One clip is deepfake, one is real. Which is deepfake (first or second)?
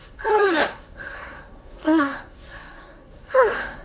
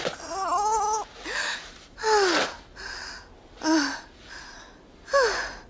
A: first